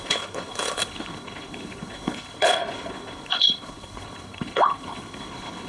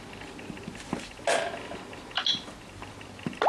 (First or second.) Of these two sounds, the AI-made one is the first